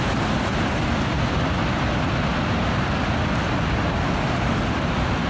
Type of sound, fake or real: real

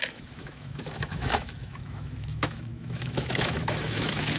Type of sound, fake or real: fake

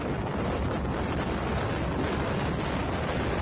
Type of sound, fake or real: real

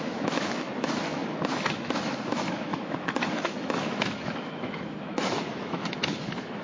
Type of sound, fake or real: fake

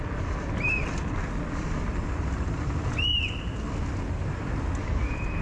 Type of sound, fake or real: real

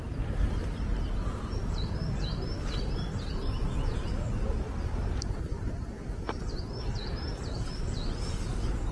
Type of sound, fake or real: real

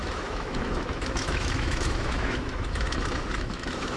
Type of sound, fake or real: fake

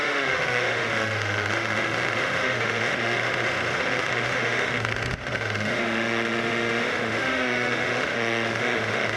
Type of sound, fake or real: fake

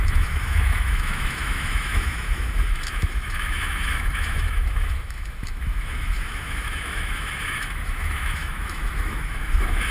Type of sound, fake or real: fake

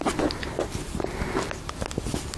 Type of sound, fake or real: real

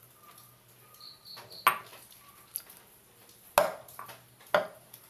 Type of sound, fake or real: real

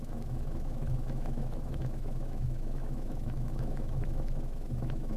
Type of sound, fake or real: fake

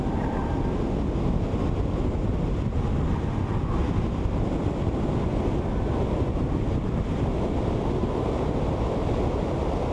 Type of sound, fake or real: real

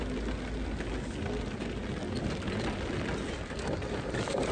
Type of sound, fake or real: real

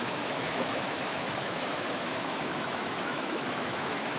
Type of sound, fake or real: fake